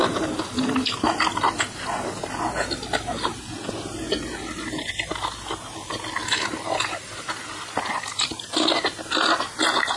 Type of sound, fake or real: real